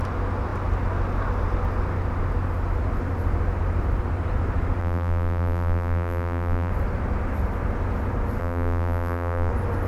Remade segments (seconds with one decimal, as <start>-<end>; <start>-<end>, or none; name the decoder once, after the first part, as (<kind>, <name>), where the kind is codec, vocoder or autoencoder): 4.8-6.7 (vocoder, BigVGAN v2); 8.4-9.5